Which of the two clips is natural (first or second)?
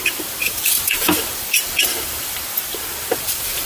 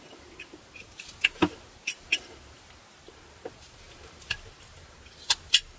second